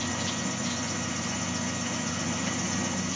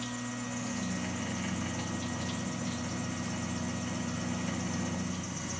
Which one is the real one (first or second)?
second